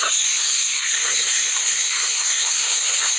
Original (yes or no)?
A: no